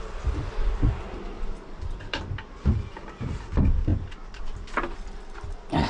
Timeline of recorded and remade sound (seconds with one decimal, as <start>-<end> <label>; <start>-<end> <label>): 0.0-5.9 remade